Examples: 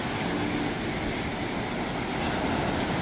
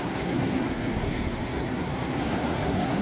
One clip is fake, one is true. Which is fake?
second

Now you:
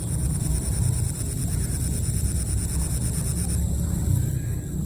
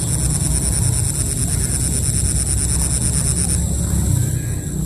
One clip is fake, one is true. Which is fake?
first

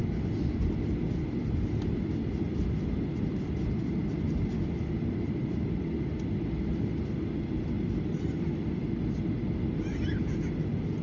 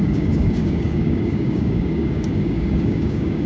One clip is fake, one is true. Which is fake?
second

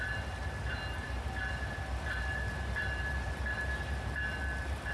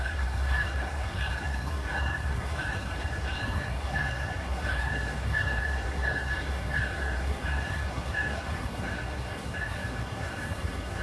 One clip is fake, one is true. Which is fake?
second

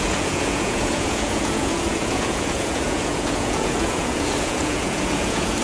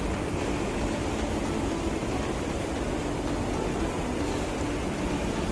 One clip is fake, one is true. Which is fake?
first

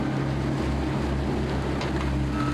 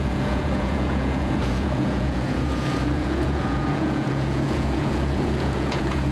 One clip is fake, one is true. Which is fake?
second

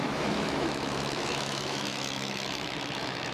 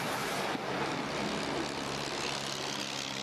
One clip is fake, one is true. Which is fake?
first